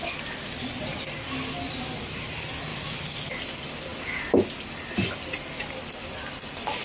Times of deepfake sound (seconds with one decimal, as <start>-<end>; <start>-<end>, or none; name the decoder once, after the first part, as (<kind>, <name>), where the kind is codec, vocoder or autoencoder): none